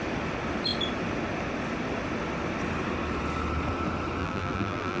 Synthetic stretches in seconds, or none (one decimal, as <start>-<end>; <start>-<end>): 4.2-5.0